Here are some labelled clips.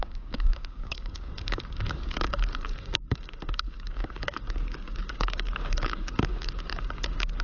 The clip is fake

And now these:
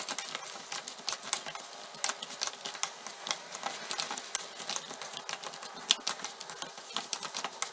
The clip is real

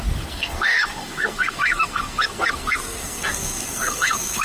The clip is fake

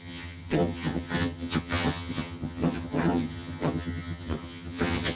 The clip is fake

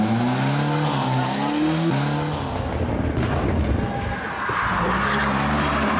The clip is real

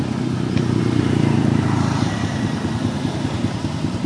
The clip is fake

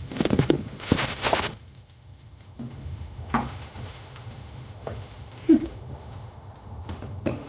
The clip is fake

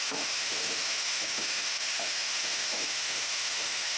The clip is fake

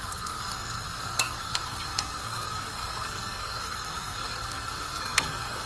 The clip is fake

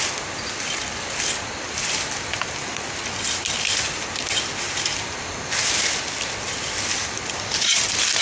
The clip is real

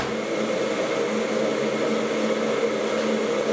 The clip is real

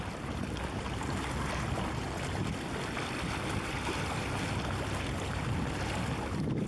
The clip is real